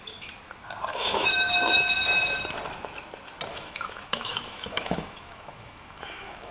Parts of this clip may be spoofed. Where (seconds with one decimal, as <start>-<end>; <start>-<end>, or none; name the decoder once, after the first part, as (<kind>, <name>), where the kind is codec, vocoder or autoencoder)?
0.9-1.8 (autoencoder, DAC-VAE); 3.5-6.5